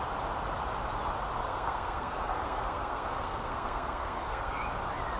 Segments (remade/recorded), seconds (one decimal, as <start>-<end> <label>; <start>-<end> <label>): 0.0-1.4 recorded; 1.4-4.5 remade; 4.5-5.2 recorded